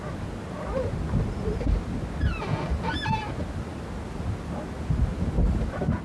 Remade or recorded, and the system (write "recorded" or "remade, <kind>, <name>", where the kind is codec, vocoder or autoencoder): recorded